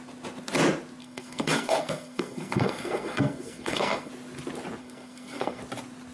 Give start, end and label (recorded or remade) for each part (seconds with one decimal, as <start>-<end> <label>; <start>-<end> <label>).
0.0-1.0 recorded; 1.0-4.1 remade; 4.1-4.8 recorded; 4.8-5.6 remade; 5.6-6.1 recorded